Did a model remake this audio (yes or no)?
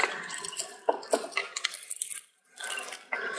yes